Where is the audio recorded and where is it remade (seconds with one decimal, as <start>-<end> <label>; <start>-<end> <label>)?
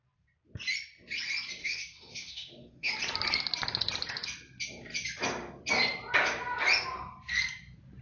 0.0-1.6 recorded; 1.6-2.9 remade; 2.9-8.0 recorded